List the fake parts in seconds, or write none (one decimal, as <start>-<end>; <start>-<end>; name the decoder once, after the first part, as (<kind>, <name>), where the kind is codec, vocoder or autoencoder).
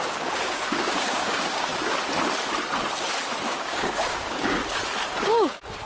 0.0-1.7 (codec, DAC); 3.5-4.6; 5.2-5.9